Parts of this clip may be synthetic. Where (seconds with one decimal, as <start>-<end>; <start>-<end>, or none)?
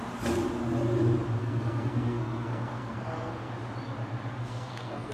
1.4-3.5; 4.3-5.1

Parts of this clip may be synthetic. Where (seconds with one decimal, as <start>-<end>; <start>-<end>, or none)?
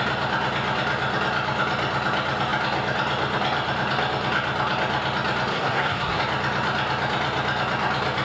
5.5-6.2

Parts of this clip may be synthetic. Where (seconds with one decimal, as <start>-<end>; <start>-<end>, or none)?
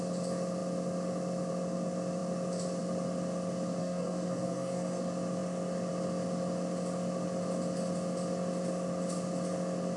3.8-5.0